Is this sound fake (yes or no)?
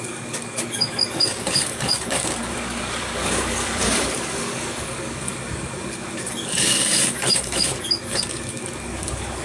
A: yes